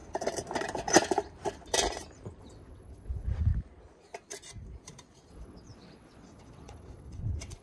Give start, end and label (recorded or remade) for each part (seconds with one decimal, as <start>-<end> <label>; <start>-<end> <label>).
0.0-2.4 recorded; 2.4-3.5 remade; 3.5-5.3 recorded; 5.3-7.6 remade